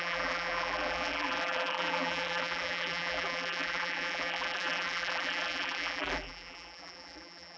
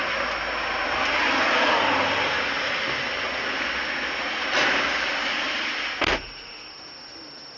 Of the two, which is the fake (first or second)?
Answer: first